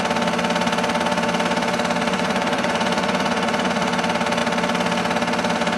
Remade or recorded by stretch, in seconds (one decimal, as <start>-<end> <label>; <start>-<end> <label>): 0.0-2.1 recorded; 2.1-4.0 remade; 4.0-5.8 recorded